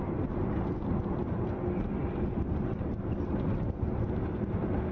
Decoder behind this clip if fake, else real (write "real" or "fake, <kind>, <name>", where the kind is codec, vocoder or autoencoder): real